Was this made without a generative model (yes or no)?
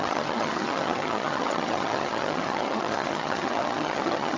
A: no